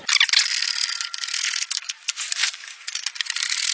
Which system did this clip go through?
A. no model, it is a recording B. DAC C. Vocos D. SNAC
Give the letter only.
A